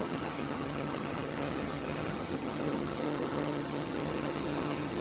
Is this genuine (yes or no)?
no